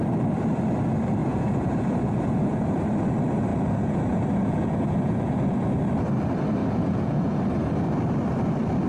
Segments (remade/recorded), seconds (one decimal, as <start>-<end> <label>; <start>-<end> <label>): 0.0-1.2 recorded; 1.2-2.8 remade; 2.8-3.5 recorded; 3.5-5.6 remade; 5.6-6.6 recorded; 6.6-7.4 remade; 7.4-8.9 recorded